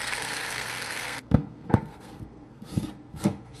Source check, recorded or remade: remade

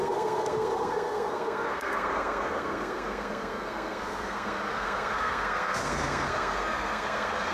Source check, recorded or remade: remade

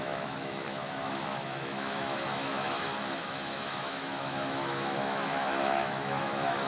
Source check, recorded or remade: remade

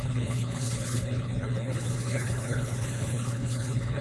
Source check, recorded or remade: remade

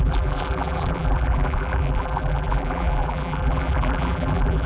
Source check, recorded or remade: remade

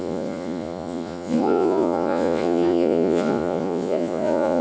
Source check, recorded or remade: remade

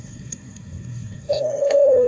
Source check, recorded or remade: remade